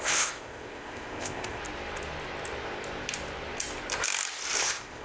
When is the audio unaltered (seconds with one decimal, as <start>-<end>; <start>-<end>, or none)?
1.6-4.6

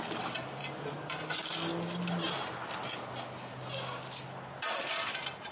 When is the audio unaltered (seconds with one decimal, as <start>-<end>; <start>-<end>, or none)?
0.0-5.5

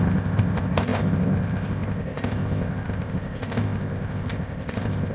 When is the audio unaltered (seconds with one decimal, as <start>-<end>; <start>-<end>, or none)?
none

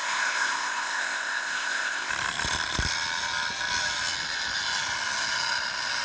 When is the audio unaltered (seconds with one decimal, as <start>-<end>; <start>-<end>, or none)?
2.1-6.0

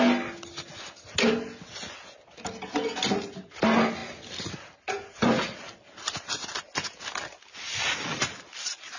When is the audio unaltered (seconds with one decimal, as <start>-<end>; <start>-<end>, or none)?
0.0-9.0

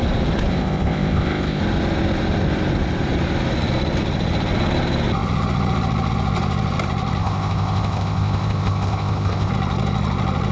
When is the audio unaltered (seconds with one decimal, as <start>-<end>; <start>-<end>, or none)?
0.0-0.5; 1.6-7.2; 9.5-10.5

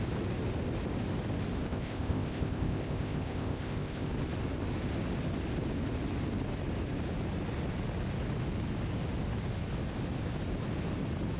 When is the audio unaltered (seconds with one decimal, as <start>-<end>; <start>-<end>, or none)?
0.0-1.6; 4.1-11.4

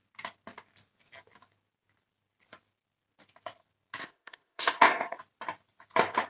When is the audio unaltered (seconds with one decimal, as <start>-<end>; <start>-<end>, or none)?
0.0-4.0; 5.2-6.3